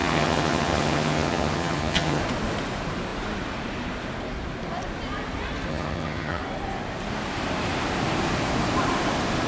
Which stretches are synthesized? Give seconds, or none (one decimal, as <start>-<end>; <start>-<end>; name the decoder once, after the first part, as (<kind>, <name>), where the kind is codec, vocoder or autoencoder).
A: 0.0-2.2 (vocoder, HiFi-GAN); 5.7-6.4